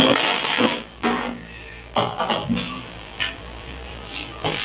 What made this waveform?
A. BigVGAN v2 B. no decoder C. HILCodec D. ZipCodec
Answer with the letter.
A